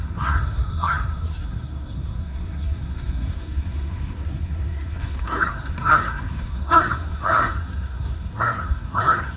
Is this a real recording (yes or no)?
no